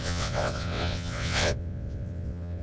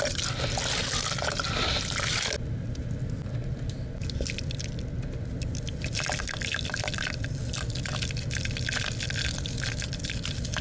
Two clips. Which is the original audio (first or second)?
second